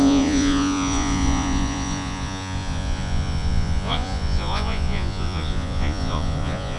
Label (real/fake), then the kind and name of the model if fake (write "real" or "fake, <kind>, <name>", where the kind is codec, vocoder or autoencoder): fake, vocoder, Vocos